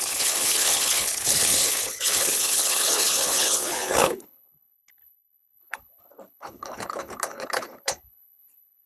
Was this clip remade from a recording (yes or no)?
yes